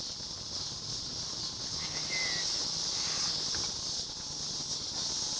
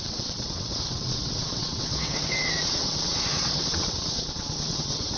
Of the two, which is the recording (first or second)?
first